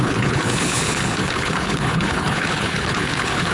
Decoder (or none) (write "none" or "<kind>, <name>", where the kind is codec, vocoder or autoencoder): codec, HILCodec